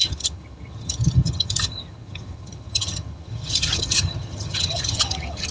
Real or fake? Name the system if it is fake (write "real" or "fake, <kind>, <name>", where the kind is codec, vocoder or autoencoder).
fake, vocoder, HiFi-GAN